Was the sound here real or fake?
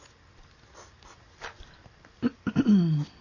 real